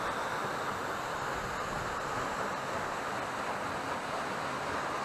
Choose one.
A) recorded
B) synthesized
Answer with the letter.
A